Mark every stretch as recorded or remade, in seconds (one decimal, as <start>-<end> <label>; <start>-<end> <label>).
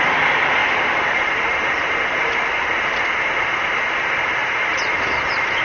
0.0-0.6 recorded; 0.6-2.4 remade; 2.4-4.4 recorded; 4.4-5.6 remade